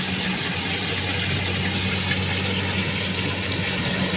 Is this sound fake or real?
real